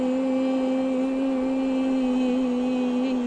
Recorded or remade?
recorded